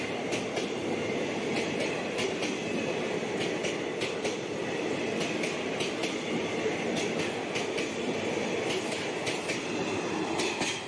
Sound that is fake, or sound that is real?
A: real